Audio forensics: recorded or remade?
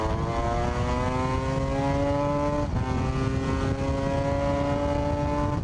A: recorded